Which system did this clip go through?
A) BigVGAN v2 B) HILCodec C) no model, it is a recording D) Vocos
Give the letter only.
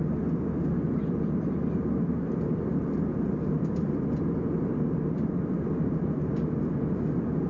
C